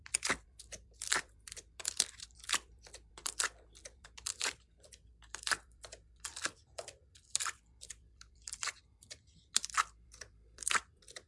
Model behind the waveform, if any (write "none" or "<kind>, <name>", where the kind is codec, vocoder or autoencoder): vocoder, BigVGAN v2